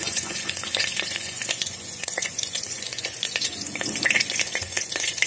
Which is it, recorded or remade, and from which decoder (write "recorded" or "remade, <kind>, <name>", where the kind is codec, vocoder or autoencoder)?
remade, vocoder, Vocos